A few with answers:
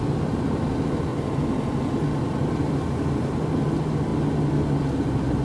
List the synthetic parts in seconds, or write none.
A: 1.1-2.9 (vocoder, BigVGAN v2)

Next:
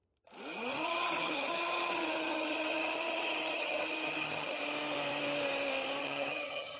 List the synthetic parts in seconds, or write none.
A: 0.5-4.6 (vocoder, HiFi-GAN); 6.0-6.8

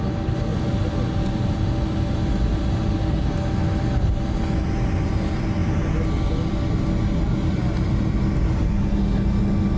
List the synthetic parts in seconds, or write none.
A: none

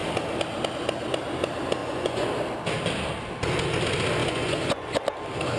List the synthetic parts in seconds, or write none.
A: 1.8-2.3 (vocoder, Vocos); 4.2-5.0